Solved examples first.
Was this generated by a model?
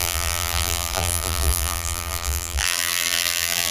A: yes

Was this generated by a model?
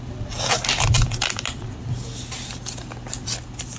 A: no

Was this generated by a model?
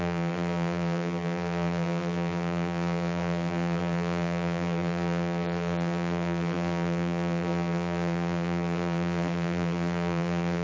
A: yes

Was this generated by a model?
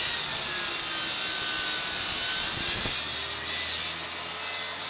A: no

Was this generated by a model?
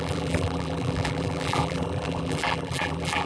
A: yes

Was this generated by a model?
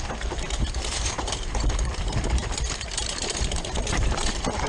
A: yes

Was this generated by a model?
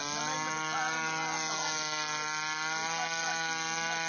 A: no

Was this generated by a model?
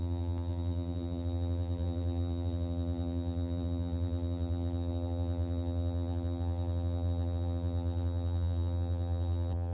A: yes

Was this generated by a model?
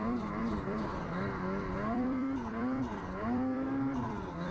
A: yes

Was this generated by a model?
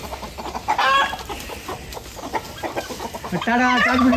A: no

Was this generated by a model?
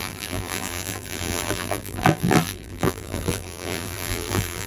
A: yes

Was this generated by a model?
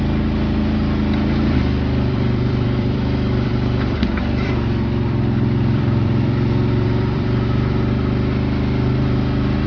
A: yes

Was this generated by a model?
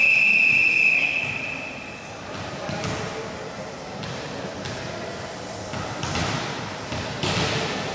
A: yes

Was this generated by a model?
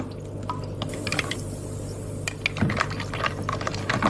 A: no